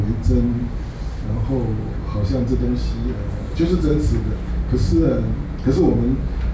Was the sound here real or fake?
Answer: real